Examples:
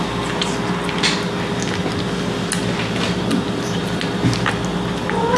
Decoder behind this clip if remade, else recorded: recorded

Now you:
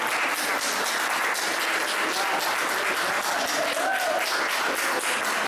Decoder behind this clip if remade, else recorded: recorded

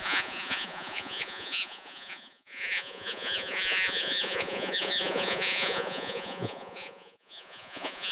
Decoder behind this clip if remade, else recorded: remade, vocoder, Vocos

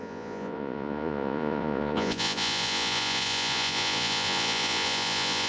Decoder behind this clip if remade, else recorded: remade, vocoder, Vocos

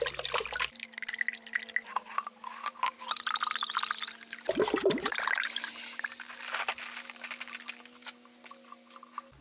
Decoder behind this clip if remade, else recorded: recorded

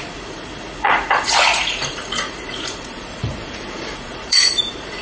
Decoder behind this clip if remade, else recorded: remade, vocoder, Vocos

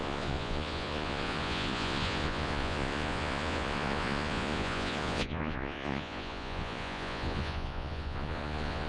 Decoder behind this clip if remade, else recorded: remade, vocoder, Vocos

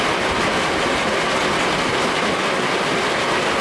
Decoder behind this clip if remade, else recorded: recorded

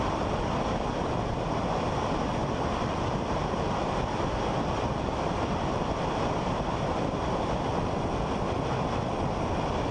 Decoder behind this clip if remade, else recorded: recorded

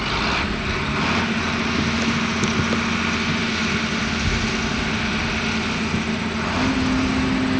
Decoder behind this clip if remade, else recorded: recorded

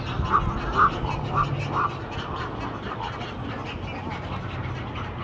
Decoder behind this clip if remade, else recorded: recorded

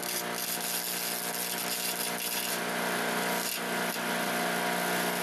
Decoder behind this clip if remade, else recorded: recorded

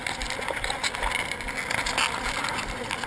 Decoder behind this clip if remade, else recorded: recorded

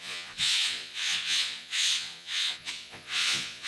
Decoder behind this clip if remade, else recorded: remade, vocoder, Vocos